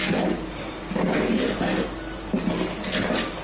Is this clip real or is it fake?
real